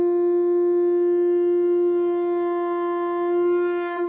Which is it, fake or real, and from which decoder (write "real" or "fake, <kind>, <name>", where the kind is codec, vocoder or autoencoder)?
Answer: real